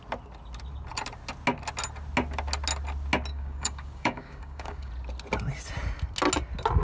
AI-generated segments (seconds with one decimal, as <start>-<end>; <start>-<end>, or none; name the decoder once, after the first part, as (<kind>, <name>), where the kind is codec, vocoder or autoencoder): 3.3-4.9 (codec, DAC)